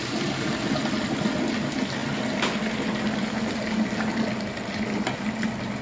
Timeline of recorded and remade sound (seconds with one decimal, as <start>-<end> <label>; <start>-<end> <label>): 0.0-5.8 recorded